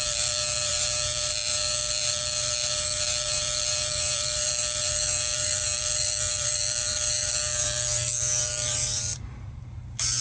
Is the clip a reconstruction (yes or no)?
yes